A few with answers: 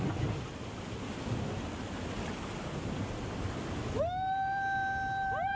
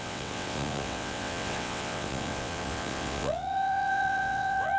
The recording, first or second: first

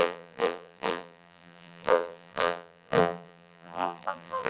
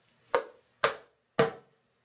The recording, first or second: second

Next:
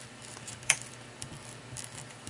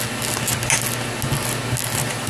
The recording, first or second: second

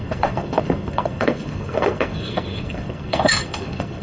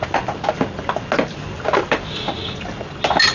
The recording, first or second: second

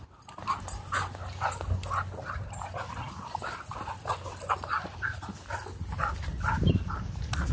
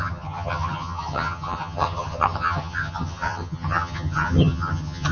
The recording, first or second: first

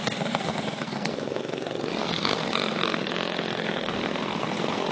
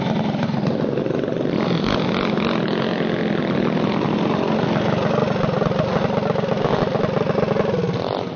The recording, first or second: second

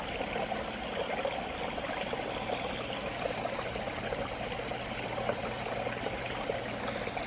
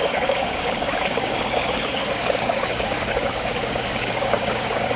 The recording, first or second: first